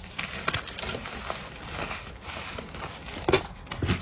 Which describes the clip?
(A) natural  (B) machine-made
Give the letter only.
A